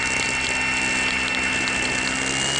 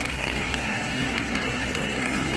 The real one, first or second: first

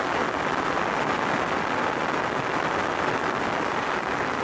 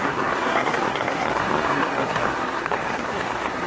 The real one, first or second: first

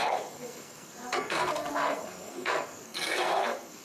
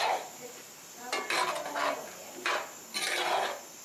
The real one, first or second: second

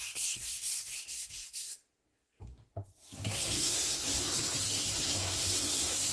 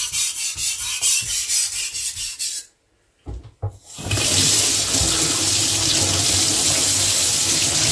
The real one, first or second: second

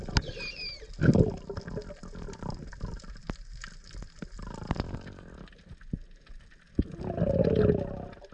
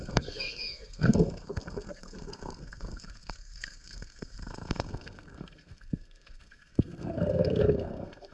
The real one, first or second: first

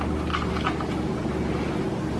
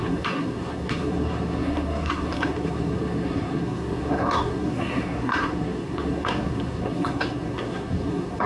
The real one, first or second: first